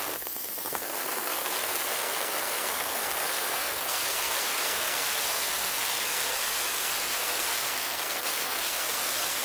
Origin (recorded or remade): remade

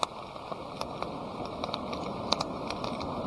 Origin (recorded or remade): recorded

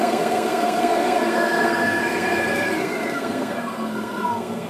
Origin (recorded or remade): remade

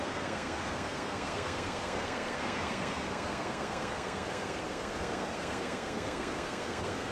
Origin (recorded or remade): remade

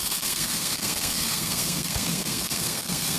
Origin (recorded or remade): remade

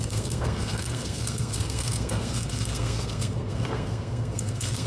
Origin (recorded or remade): remade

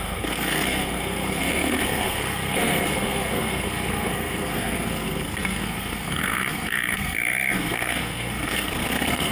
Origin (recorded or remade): remade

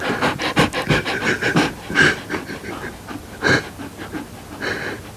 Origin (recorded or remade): recorded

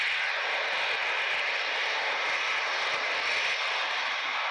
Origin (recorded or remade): recorded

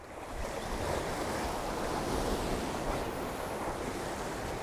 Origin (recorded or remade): recorded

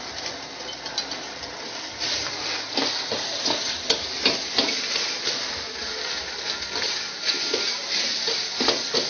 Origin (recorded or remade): recorded